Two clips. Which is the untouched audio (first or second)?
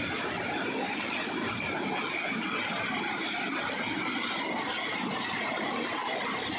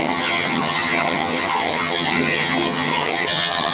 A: first